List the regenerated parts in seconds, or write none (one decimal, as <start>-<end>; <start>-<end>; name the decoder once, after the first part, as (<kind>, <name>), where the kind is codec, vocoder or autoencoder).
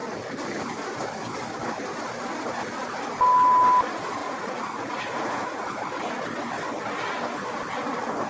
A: 4.2-6.0 (vocoder, Vocos)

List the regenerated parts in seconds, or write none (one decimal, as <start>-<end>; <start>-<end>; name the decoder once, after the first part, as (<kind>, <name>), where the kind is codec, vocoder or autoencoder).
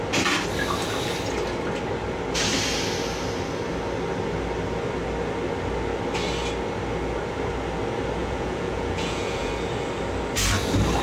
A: 8.2-9.5 (vocoder, Vocos)